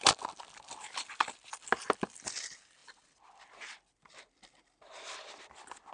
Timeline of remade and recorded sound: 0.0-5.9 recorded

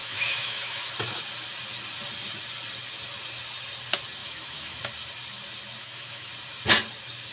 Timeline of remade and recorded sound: 0.0-0.9 remade; 0.9-4.2 recorded; 4.2-4.8 remade; 4.8-5.8 recorded; 5.8-6.3 remade; 6.3-7.3 recorded

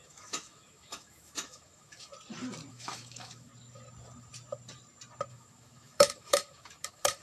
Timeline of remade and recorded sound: 0.0-2.1 remade; 2.1-2.7 recorded; 2.7-3.5 remade; 3.5-5.3 recorded; 5.3-7.2 remade

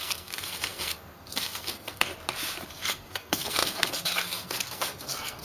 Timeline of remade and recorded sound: 0.0-2.1 remade; 2.1-2.7 recorded; 2.7-5.4 remade